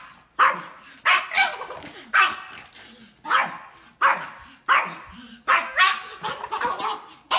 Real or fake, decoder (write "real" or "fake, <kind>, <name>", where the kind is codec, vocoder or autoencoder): real